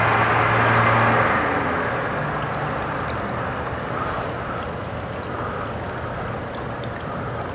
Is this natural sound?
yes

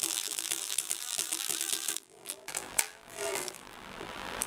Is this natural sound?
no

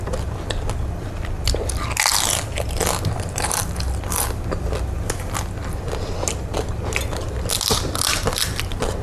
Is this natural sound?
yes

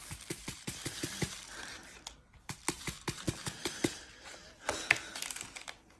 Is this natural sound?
yes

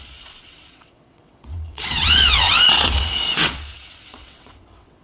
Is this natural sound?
no